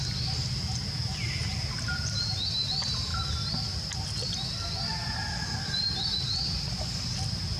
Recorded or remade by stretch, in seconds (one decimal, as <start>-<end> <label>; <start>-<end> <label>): 0.0-3.1 recorded; 3.1-7.6 remade

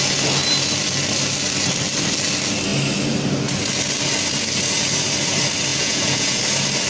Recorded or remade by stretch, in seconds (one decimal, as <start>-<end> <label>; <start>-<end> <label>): 0.0-5.7 recorded; 5.7-6.4 remade; 6.4-6.9 recorded